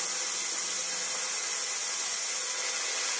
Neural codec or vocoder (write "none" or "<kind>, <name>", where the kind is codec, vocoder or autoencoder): none